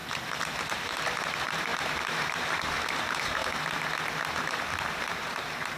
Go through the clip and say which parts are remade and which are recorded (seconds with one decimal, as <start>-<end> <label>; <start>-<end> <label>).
0.0-0.6 recorded; 0.6-3.4 remade; 3.4-4.3 recorded; 4.3-5.8 remade